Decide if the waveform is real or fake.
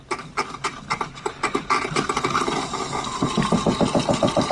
real